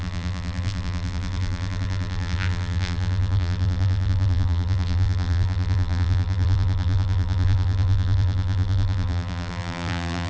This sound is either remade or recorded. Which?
remade